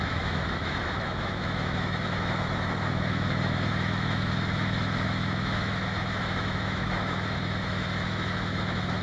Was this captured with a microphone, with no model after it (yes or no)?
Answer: no